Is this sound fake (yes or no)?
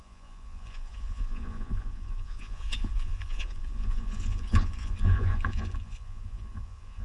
yes